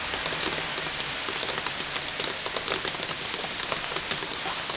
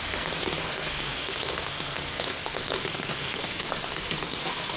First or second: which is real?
first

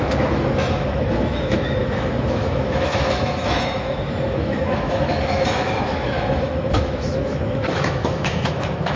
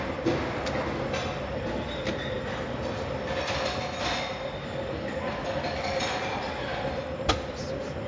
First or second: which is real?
second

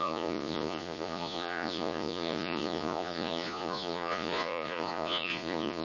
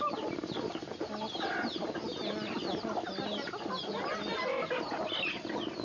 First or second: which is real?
second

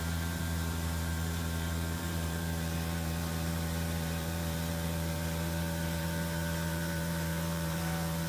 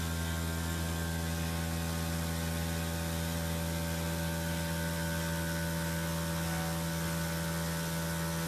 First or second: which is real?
second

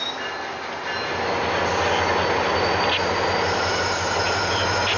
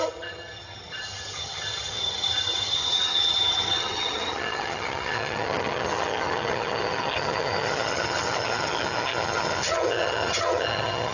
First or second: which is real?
first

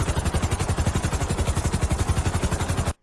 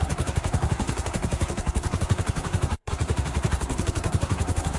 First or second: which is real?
first